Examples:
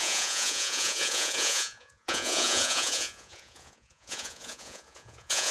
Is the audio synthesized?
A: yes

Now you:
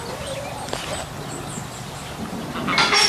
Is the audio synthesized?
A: no